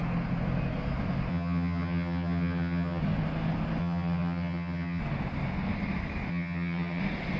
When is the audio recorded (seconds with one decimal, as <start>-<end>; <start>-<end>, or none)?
0.0-1.3; 3.0-3.8; 5.0-6.3; 7.0-7.4